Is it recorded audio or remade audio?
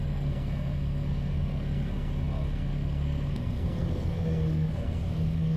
remade